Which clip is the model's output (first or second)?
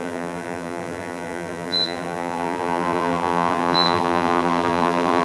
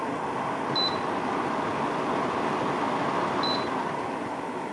first